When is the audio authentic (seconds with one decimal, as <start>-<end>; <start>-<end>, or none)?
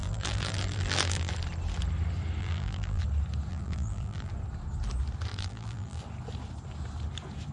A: 1.3-2.4; 3.0-3.5; 4.3-5.3; 6.0-7.5